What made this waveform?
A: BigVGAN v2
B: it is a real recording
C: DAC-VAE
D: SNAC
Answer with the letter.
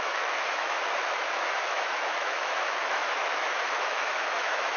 C